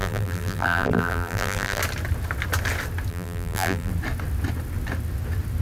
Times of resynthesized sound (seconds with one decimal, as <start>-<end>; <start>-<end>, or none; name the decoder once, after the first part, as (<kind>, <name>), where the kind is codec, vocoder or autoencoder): 0.0-1.8 (vocoder, BigVGAN v2); 3.1-3.9